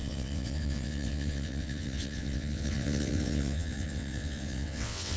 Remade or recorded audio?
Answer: remade